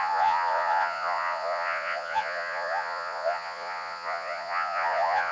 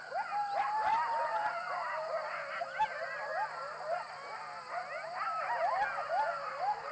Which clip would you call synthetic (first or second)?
first